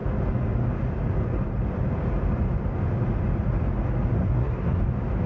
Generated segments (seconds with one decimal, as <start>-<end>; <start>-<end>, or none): 4.2-4.8